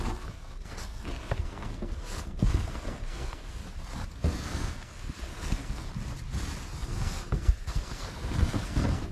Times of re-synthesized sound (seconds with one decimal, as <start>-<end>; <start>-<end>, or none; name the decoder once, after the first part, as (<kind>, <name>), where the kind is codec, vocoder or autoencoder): 0.0-3.6 (codec, SNAC); 4.1-5.9; 6.6-9.1